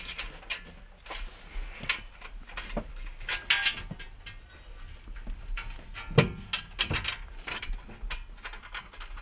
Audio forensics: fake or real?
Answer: real